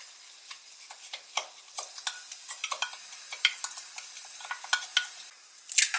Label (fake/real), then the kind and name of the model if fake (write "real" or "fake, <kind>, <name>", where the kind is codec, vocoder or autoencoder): real